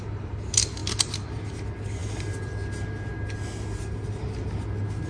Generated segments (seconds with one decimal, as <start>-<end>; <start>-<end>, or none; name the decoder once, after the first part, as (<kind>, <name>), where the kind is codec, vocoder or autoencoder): none